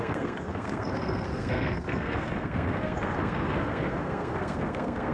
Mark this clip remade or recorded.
remade